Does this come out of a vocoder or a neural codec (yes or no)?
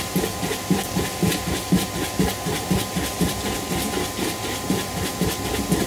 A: no